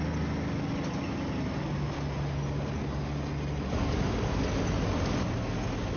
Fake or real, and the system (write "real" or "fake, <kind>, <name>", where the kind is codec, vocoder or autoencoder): real